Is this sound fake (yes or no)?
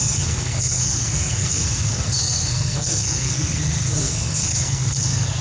yes